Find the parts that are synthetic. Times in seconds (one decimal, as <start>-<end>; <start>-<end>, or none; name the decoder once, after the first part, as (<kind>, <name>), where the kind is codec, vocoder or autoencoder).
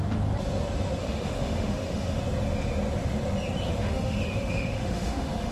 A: 1.0-2.2 (autoencoder, DAC-VAE); 3.7-5.5